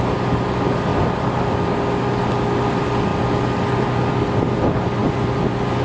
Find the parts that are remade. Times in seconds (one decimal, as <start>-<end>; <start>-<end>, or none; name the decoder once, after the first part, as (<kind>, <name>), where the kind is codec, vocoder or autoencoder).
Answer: 0.9-1.4 (vocoder, BigVGAN v2)